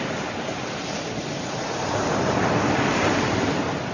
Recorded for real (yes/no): no